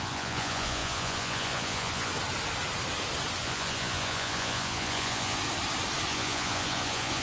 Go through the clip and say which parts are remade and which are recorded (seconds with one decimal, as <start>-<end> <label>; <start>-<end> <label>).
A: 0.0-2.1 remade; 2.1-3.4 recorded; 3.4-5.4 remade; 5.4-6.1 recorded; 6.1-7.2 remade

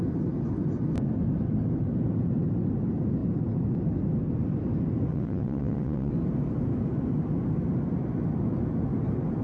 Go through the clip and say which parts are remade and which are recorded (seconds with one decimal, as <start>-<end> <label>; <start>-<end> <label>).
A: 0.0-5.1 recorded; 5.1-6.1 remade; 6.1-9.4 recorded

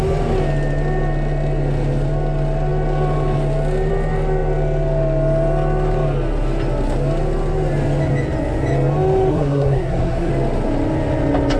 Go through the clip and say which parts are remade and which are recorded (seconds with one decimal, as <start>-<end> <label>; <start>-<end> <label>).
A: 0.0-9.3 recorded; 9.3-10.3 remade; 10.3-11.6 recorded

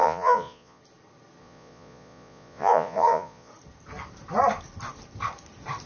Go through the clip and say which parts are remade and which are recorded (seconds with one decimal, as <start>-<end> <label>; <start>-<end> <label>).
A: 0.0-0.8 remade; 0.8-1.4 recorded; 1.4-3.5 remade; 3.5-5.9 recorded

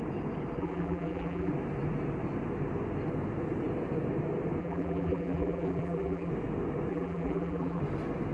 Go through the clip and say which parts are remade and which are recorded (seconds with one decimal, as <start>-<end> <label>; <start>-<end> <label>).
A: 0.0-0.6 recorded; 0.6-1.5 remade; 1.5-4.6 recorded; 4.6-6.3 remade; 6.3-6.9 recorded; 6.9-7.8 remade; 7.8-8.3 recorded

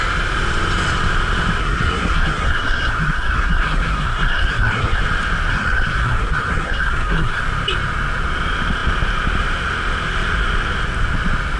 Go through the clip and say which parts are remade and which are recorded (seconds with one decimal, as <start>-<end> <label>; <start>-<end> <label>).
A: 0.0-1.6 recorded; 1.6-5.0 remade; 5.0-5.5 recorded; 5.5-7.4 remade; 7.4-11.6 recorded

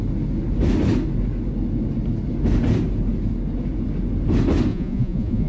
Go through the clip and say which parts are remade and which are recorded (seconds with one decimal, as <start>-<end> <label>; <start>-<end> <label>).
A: 0.0-4.7 recorded; 4.7-5.5 remade